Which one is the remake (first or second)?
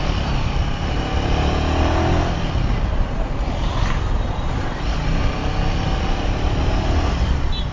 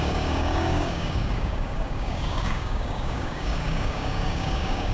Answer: second